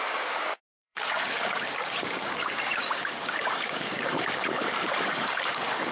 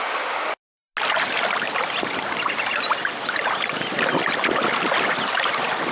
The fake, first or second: first